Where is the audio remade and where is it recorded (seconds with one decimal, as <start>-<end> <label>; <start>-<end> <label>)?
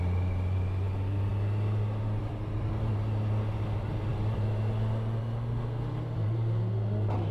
0.0-7.3 recorded